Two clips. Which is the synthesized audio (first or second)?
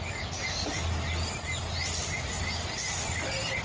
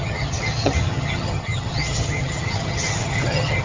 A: second